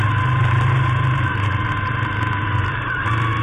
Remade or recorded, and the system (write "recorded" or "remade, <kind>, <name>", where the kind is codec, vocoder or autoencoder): remade, vocoder, BigVGAN v2